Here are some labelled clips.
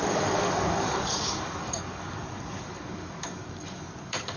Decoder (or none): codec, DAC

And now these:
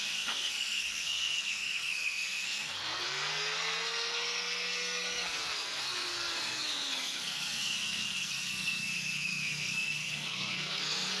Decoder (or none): codec, SNAC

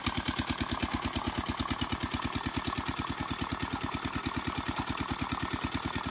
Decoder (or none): none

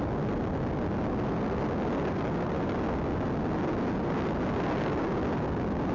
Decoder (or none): none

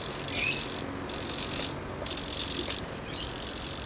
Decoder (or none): none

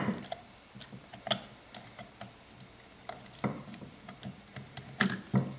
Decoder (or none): none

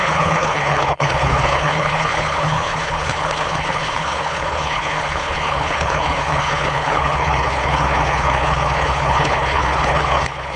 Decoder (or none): codec, HILCodec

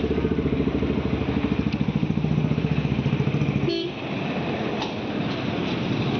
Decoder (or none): none